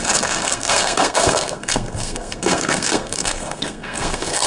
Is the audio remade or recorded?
remade